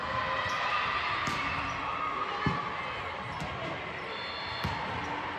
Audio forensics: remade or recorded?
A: recorded